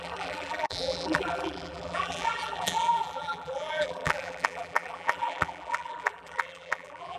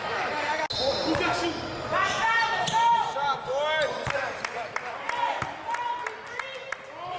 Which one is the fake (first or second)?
first